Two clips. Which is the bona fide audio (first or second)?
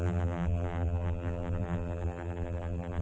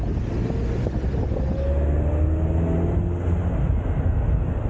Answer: second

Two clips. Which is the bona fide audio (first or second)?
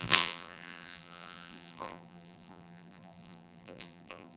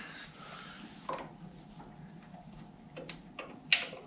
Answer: second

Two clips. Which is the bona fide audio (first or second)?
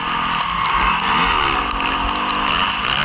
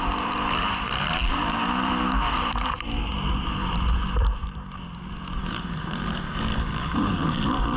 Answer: first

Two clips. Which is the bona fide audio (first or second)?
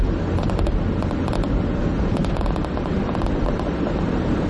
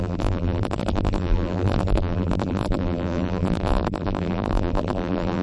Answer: first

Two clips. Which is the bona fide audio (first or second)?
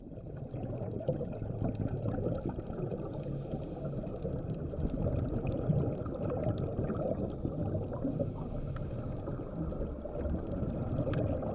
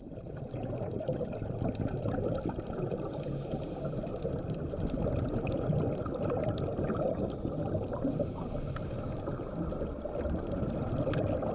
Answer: first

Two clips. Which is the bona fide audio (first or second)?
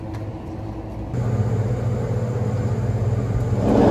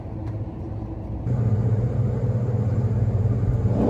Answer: first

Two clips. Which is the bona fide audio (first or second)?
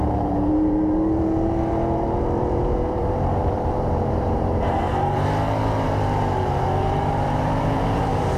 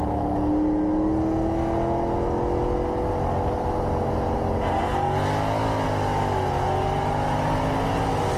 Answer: second